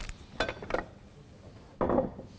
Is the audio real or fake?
real